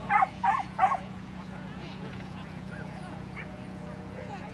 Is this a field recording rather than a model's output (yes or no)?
no